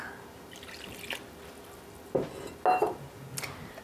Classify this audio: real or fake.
real